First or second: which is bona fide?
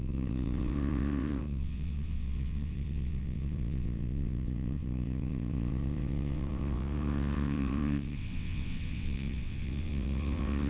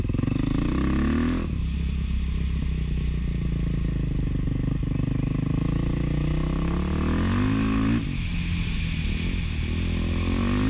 second